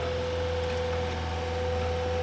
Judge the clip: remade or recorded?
recorded